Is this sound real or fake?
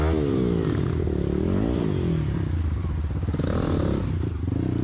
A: real